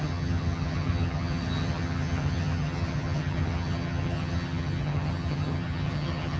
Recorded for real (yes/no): no